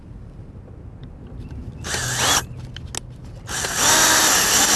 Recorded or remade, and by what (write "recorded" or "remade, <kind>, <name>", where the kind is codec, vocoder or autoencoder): recorded